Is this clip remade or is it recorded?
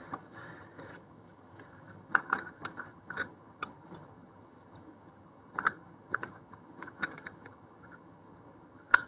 remade